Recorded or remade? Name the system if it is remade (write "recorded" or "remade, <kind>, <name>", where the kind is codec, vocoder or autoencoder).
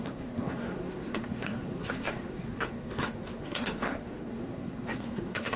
remade, codec, SNAC